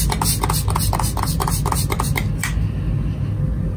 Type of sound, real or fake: real